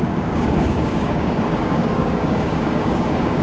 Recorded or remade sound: remade